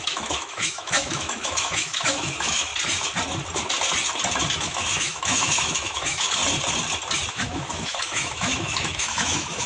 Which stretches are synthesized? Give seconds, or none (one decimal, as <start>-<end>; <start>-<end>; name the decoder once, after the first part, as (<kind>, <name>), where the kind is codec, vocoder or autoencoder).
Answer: 0.0-2.7 (autoencoder, DAC-VAE); 4.6-6.4; 7.3-9.7